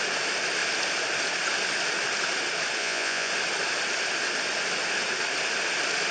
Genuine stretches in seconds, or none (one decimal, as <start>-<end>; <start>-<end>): 0.0-2.8; 3.3-6.1